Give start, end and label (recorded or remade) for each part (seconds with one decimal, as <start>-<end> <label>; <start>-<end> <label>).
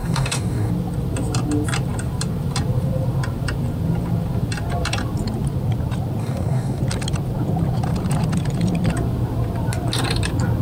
0.0-0.7 remade; 0.7-6.2 recorded; 6.2-6.8 remade; 6.8-10.6 recorded